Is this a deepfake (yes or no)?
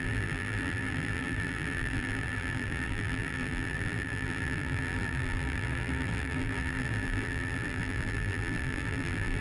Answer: yes